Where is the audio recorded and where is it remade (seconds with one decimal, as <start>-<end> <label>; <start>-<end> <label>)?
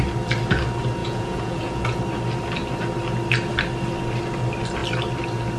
0.0-1.0 recorded; 1.0-2.0 remade; 2.0-5.6 recorded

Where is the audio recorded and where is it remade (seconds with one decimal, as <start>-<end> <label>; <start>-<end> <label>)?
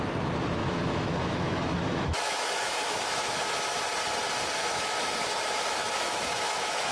0.0-0.6 recorded; 0.6-3.4 remade; 3.4-4.6 recorded; 4.6-6.9 remade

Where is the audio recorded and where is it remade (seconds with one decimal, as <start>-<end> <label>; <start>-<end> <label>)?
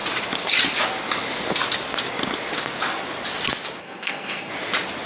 0.0-3.8 recorded; 3.8-4.5 remade; 4.5-5.1 recorded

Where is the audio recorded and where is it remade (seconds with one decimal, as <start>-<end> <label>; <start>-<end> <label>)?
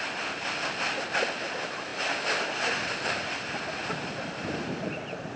0.0-5.4 recorded